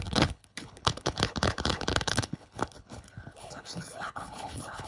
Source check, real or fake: fake